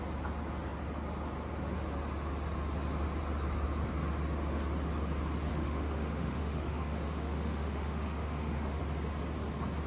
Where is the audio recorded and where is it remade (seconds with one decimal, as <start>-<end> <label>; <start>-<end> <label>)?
0.0-5.5 recorded; 5.5-8.8 remade; 8.8-9.9 recorded